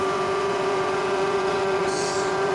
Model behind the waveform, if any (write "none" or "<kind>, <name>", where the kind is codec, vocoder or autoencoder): vocoder, Vocos